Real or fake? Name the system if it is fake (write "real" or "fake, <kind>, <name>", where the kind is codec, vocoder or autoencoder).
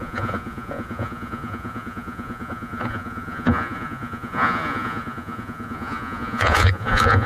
fake, vocoder, Vocos